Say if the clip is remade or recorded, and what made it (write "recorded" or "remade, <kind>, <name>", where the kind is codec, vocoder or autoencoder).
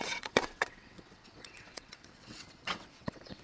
remade, vocoder, WaveNeXt